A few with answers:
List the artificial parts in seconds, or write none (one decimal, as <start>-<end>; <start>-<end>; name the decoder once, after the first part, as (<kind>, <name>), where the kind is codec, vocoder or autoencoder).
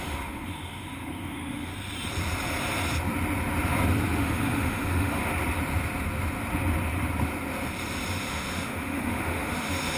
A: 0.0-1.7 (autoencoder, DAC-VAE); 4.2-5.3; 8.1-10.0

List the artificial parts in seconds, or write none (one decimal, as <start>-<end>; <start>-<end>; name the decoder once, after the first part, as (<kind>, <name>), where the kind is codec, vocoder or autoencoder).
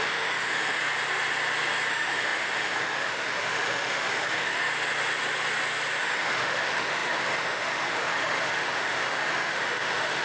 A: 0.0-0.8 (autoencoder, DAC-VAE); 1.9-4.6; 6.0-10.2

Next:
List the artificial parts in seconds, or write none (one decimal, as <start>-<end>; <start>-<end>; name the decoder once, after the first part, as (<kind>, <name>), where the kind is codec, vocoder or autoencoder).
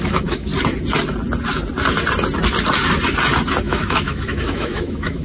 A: 0.0-0.5 (autoencoder, DAC-VAE); 3.6-5.2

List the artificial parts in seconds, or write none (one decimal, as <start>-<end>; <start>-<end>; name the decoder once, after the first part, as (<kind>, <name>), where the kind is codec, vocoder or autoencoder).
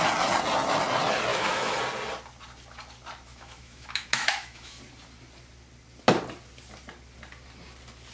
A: 1.3-1.8 (autoencoder, DAC-VAE); 3.3-4.8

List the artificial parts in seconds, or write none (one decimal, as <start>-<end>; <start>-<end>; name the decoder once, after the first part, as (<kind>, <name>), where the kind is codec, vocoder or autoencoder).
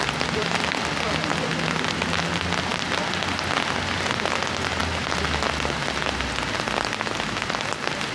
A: none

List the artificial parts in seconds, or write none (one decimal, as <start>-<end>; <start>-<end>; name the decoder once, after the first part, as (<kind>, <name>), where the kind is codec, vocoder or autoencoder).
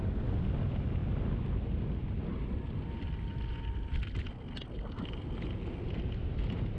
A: none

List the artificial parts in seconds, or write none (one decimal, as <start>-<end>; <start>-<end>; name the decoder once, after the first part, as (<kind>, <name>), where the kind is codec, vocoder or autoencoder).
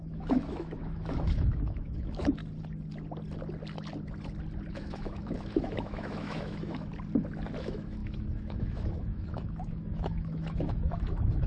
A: 0.0-2.4 (autoencoder, DAC-VAE); 4.7-6.9; 7.6-11.5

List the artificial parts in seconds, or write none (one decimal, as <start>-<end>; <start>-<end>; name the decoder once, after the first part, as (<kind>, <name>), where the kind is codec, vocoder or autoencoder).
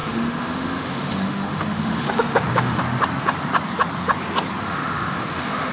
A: 0.0-2.8 (autoencoder, DAC-VAE); 4.6-5.7